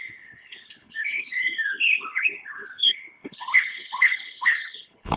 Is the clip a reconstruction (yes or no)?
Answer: yes